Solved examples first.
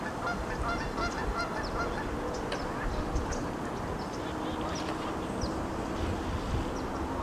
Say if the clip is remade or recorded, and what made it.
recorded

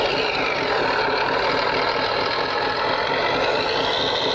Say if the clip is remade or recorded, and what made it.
recorded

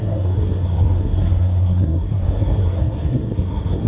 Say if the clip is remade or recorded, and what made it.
remade, codec, SNAC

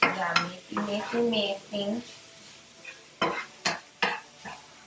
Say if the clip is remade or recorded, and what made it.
recorded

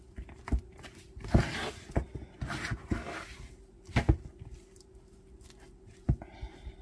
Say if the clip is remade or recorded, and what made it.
recorded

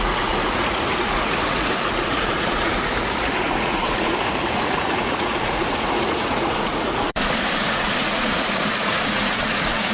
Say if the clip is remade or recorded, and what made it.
remade, vocoder, Vocos